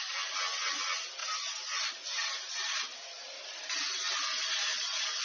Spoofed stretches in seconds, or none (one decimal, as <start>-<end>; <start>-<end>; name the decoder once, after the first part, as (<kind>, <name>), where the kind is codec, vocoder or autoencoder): 1.2-1.9 (vocoder, BigVGAN v2); 3.1-3.8

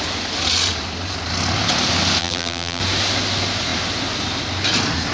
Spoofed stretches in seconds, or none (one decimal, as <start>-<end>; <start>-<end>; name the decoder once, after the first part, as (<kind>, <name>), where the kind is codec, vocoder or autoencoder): 2.2-2.8 (vocoder, BigVGAN v2)

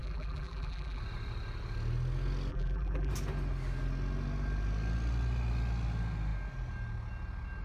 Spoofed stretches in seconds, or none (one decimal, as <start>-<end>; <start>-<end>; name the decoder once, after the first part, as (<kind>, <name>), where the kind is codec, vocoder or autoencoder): 0.0-1.0 (vocoder, BigVGAN v2); 2.5-3.1

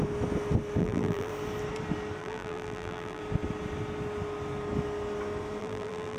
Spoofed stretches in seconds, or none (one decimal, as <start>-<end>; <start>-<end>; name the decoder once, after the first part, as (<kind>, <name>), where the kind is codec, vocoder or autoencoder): 0.8-1.3 (vocoder, BigVGAN v2); 2.2-3.2; 5.6-6.2